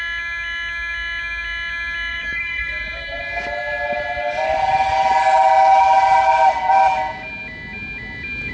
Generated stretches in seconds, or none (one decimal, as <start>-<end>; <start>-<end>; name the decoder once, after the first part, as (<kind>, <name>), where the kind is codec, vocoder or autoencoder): 2.1-3.2 (vocoder, BigVGAN v2); 5.7-6.8